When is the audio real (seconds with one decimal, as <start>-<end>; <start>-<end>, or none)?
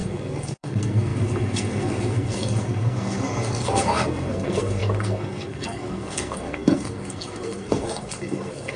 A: none